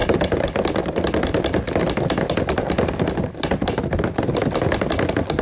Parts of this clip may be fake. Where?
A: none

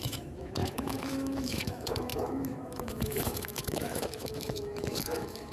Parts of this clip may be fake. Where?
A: 0.0-5.5